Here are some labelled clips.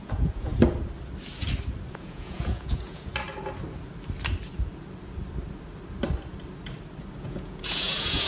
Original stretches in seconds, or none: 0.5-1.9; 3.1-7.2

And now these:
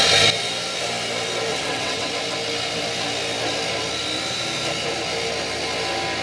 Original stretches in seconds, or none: 0.0-1.5; 2.1-6.2

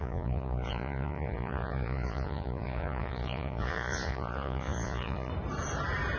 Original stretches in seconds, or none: 5.3-6.2

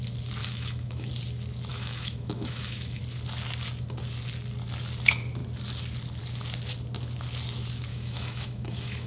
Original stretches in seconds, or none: 0.0-0.4; 1.1-1.7; 3.0-7.9

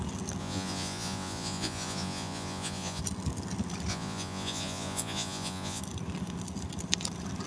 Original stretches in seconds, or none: 0.0-0.4; 3.0-3.9; 5.8-7.5

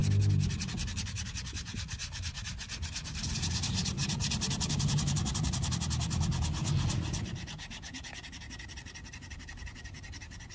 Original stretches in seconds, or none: 0.0-0.6; 5.6-7.2

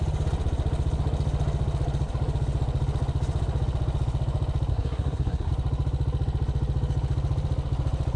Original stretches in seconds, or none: 0.0-4.7; 5.5-8.2